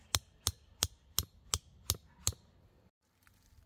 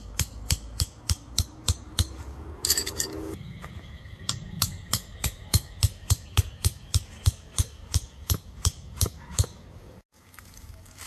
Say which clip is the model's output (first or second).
second